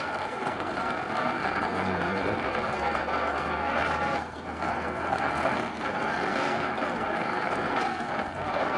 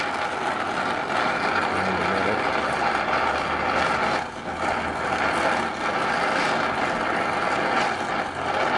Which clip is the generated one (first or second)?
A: first